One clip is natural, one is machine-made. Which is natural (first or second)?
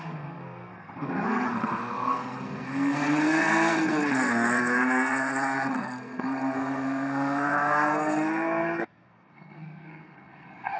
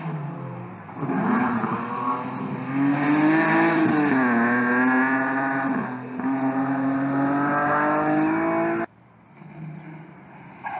second